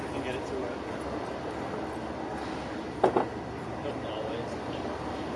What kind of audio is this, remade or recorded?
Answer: recorded